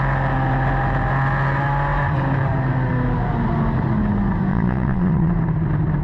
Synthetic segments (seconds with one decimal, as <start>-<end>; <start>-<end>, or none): 4.5-5.3